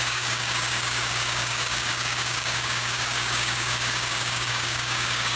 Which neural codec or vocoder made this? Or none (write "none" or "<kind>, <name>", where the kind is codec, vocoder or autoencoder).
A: codec, DAC